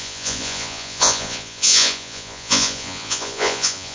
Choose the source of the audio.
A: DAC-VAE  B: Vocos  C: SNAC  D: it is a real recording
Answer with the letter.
B